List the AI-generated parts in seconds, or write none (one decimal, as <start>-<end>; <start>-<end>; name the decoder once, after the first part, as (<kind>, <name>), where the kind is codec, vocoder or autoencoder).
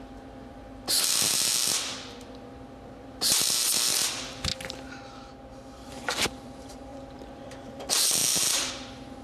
0.0-1.5 (vocoder, BigVGAN v2); 2.2-4.5; 5.9-9.2